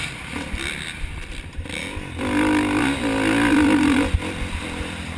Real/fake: fake